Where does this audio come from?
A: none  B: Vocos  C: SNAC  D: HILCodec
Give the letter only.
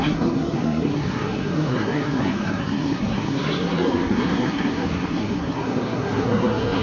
C